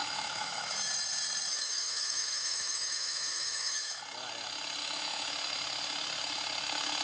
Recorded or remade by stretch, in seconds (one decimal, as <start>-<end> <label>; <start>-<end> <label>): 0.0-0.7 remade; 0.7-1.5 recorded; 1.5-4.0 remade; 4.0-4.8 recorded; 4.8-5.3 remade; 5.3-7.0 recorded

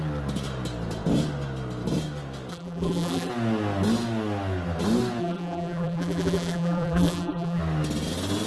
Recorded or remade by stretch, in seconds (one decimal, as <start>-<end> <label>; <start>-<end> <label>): 0.0-2.5 recorded; 2.5-3.3 remade; 3.3-5.2 recorded; 5.2-7.6 remade; 7.6-8.5 recorded

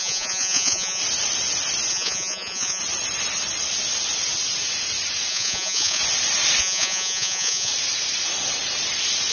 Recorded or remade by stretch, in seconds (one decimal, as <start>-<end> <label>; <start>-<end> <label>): 0.0-1.0 remade; 1.0-1.9 recorded; 1.9-2.8 remade; 2.8-5.3 recorded; 5.3-6.0 remade; 6.0-6.6 recorded; 6.6-7.7 remade; 7.7-9.3 recorded

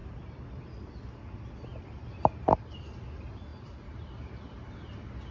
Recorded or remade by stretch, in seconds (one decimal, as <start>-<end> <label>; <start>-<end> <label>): 0.0-0.6 remade; 0.6-1.7 recorded; 1.7-2.8 remade; 2.8-5.3 recorded

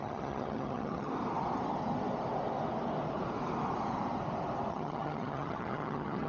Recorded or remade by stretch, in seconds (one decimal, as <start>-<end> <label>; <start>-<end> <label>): 0.0-1.1 remade; 1.1-4.7 recorded; 4.7-6.3 remade

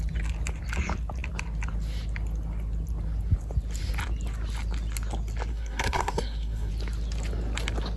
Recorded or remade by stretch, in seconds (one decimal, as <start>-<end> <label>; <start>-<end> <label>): 0.0-5.5 recorded; 5.5-6.7 remade; 6.7-8.0 recorded

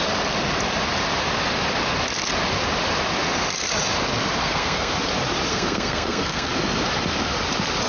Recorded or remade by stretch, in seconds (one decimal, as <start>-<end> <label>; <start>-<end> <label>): 0.0-4.4 recorded; 4.4-4.9 remade; 4.9-5.5 recorded; 5.5-6.5 remade; 6.5-7.9 recorded